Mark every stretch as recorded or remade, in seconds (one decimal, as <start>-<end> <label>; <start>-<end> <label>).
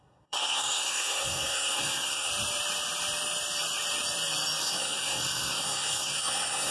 0.0-2.3 remade; 2.3-4.6 recorded; 4.6-6.7 remade